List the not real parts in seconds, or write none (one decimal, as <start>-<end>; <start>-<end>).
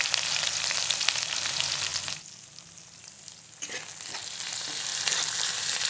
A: none